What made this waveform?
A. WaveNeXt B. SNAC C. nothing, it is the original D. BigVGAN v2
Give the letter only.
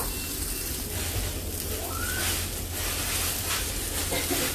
C